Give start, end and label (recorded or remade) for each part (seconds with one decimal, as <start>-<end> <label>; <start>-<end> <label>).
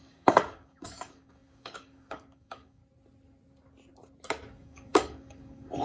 0.0-2.8 remade; 2.8-4.5 recorded; 4.5-5.8 remade